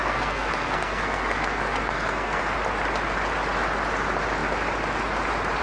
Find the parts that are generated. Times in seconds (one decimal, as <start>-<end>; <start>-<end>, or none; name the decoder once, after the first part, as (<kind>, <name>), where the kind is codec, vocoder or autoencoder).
0.0-2.4 (codec, SNAC)